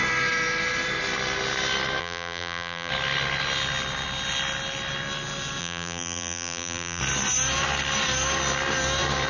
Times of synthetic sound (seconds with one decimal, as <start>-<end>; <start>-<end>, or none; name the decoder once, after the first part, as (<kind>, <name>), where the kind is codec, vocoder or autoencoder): 2.0-2.9 (vocoder, BigVGAN v2); 5.6-7.0